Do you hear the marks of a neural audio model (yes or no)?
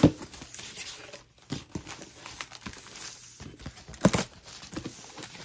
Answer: no